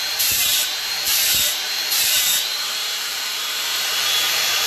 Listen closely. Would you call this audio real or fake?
fake